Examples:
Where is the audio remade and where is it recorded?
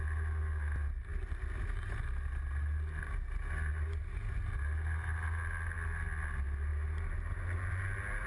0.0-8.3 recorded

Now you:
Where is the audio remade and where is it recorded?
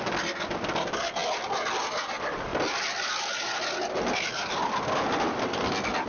0.0-6.1 recorded